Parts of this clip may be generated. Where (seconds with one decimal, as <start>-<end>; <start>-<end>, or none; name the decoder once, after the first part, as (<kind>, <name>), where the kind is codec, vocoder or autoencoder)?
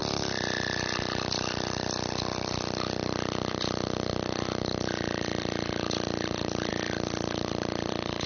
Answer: none